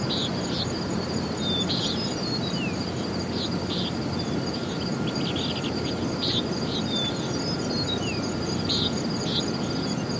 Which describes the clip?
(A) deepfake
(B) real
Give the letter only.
A